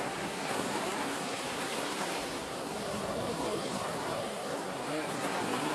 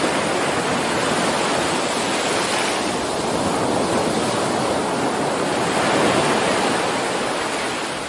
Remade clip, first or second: first